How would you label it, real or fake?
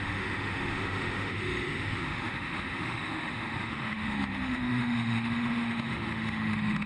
fake